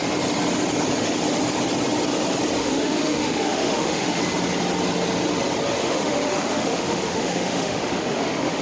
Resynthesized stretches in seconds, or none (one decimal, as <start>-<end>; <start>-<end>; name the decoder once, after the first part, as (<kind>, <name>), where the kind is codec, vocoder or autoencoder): 2.6-4.2 (autoencoder, DAC-VAE); 5.8-8.6